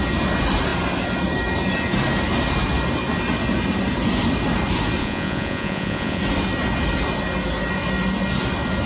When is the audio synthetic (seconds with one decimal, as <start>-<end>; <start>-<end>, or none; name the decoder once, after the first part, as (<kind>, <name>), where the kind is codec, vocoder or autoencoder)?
5.0-6.2 (vocoder, Vocos)